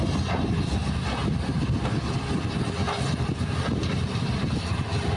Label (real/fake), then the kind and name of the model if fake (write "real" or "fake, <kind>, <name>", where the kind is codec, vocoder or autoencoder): real